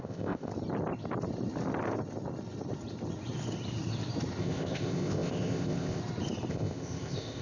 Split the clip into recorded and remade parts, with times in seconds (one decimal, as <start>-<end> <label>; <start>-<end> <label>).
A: 0.0-0.5 remade; 0.5-4.4 recorded; 4.4-6.0 remade; 6.0-6.5 recorded; 6.5-7.4 remade